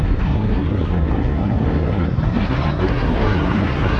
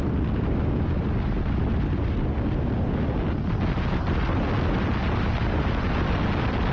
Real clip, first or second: second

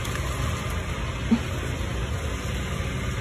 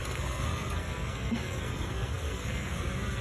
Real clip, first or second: first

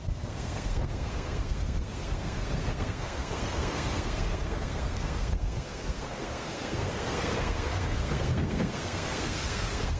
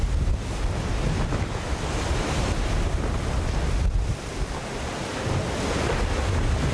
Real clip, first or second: second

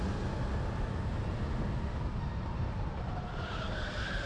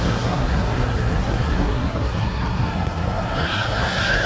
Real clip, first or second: first